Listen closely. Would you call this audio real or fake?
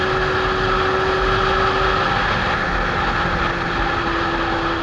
real